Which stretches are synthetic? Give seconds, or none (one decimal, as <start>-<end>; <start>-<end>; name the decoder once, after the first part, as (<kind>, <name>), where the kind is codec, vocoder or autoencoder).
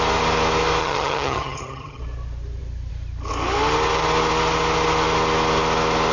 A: 0.8-2.0 (vocoder, HiFi-GAN)